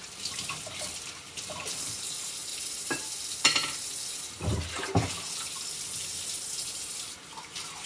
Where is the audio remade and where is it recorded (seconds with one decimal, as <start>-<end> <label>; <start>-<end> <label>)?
0.0-7.9 recorded

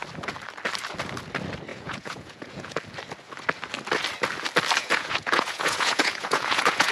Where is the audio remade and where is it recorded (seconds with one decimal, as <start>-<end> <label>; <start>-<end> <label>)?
0.0-1.7 recorded; 1.7-2.8 remade; 2.8-4.8 recorded; 4.8-6.9 remade

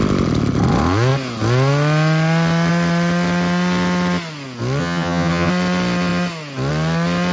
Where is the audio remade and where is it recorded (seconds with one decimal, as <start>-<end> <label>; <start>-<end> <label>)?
0.0-4.8 recorded; 4.8-5.5 remade; 5.5-7.3 recorded

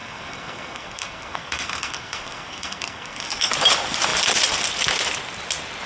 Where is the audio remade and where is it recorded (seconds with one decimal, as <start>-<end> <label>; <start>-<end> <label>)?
0.0-3.5 remade; 3.5-5.9 recorded

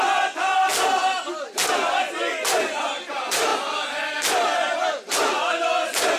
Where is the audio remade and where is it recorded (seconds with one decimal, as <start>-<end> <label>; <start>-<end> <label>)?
0.0-6.2 recorded

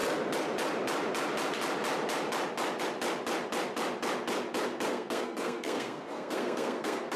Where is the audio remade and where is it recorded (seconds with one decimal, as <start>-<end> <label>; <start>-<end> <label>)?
0.0-4.9 recorded; 4.9-7.2 remade

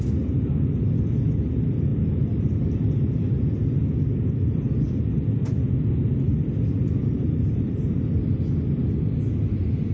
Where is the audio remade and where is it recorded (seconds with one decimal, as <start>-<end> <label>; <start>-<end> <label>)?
0.0-7.0 recorded; 7.0-8.0 remade; 8.0-9.9 recorded